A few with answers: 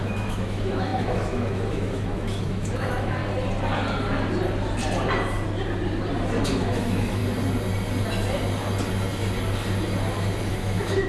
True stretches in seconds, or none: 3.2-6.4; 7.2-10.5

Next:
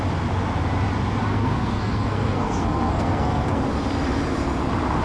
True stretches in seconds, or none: 0.0-1.3; 3.6-5.0

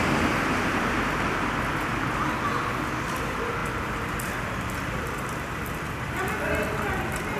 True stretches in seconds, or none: 0.0-7.4